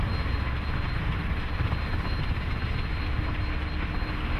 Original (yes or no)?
yes